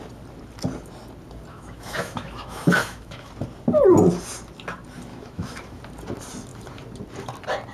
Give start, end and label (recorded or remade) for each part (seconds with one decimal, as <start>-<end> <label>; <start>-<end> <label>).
0.0-1.5 recorded; 1.5-3.3 remade; 3.3-5.1 recorded; 5.1-5.8 remade; 5.8-7.7 recorded